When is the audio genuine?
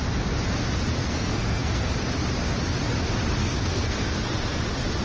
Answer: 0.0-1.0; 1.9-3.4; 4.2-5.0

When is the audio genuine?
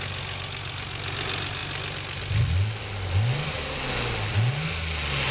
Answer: 0.0-5.3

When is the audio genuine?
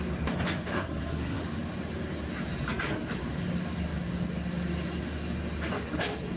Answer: 0.0-0.7; 1.4-6.4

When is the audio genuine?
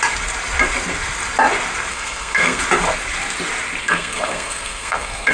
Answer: 0.0-1.9; 2.6-3.8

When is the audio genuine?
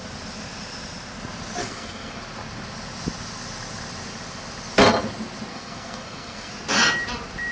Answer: 0.0-1.6; 2.2-5.5; 6.5-7.5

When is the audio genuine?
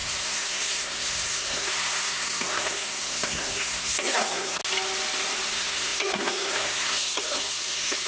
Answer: 4.6-5.5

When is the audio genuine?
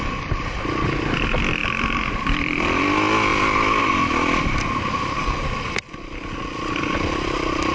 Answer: 0.0-7.7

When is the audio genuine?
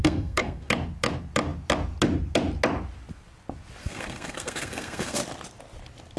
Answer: 0.7-3.8; 5.2-6.2